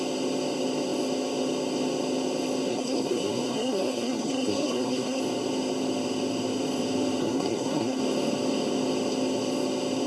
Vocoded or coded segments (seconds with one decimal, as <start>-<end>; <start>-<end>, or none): 2.7-5.2; 7.2-8.0